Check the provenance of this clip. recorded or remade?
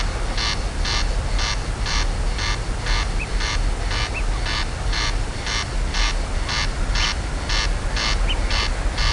recorded